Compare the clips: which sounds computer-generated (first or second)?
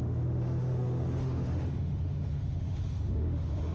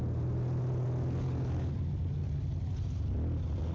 first